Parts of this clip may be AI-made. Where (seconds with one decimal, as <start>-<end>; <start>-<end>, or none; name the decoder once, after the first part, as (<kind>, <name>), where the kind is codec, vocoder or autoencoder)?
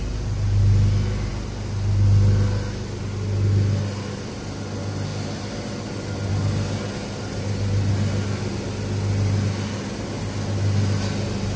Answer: none